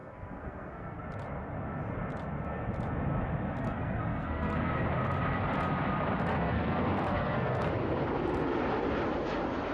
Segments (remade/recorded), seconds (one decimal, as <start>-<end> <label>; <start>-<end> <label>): 0.0-1.0 remade; 1.0-3.6 recorded; 3.6-4.7 remade; 4.7-6.3 recorded; 6.3-7.7 remade; 7.7-9.7 recorded